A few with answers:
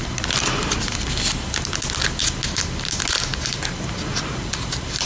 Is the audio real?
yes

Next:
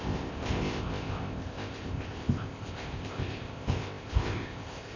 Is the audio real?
no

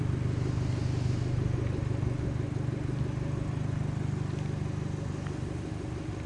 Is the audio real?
yes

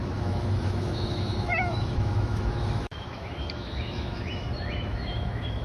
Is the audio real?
no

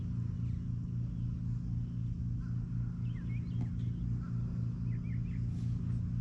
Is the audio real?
yes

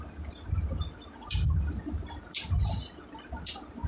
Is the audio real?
yes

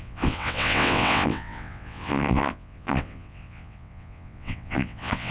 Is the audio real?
no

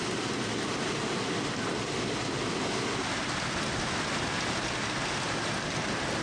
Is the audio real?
yes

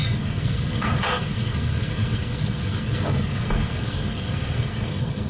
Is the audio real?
no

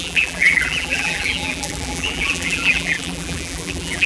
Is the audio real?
no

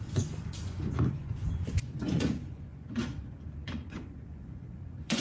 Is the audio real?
no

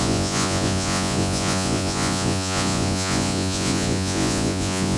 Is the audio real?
no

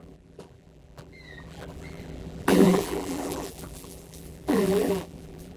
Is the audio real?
no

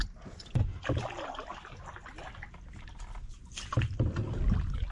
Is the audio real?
yes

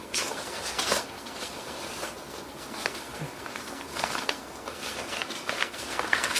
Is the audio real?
no